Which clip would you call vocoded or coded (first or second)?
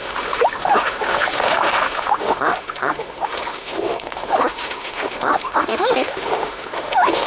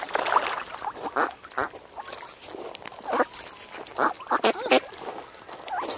first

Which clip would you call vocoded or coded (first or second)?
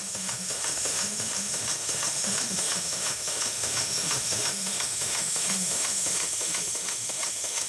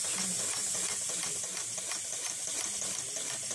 first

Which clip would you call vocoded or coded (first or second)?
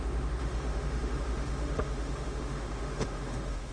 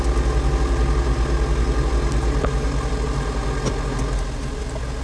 first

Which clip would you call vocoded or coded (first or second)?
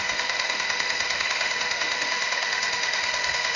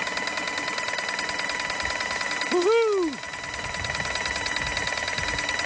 first